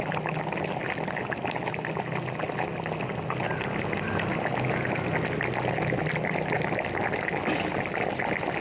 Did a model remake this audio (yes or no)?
no